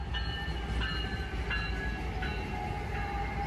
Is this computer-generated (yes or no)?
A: no